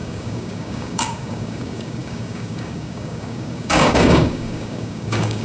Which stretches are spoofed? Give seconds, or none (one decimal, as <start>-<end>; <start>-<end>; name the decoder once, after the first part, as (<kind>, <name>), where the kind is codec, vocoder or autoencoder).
0.0-5.4 (codec, DAC)